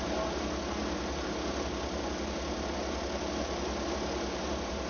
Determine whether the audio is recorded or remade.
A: recorded